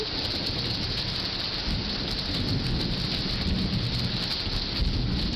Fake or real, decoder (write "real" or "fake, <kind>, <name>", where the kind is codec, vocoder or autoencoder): real